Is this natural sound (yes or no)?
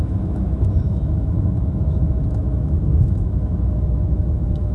no